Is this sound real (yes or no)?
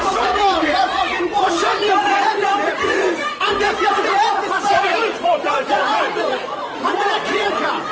no